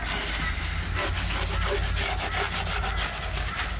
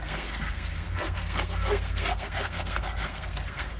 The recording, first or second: first